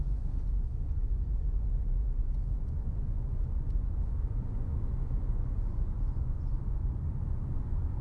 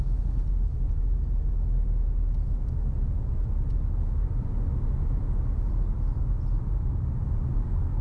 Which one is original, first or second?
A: second